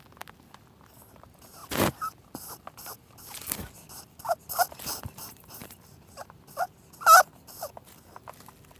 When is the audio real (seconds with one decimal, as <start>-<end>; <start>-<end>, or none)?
0.0-8.8